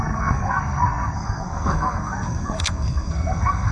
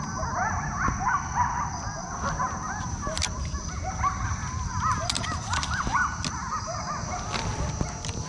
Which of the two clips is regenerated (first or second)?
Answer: first